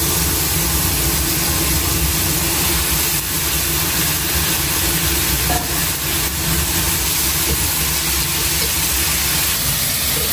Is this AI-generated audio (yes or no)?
no